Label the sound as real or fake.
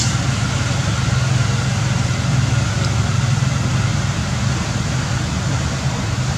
real